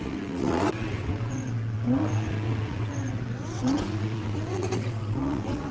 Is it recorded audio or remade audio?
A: remade